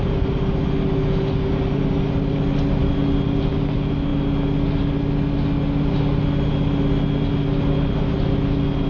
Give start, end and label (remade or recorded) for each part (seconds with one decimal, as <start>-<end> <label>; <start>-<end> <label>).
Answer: 0.0-8.9 recorded